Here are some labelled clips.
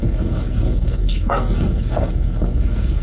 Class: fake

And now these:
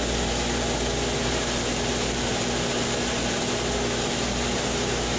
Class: real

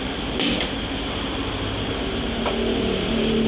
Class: real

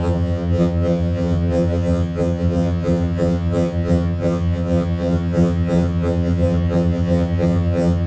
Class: fake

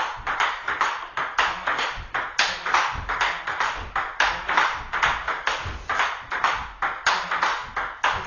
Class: real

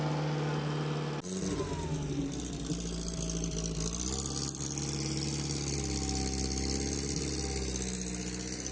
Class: real